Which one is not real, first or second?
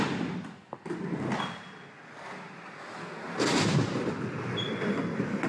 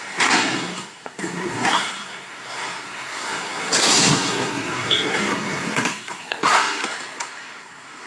second